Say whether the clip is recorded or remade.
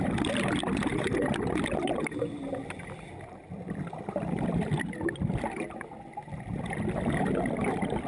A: recorded